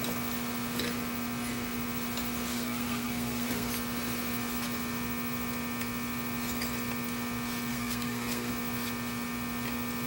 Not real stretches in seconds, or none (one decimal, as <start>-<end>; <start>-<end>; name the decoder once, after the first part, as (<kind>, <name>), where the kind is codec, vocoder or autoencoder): 2.5-3.7 (codec, SNAC); 7.7-8.5